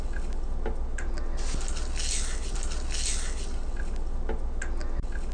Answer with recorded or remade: recorded